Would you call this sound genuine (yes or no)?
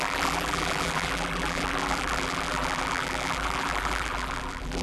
no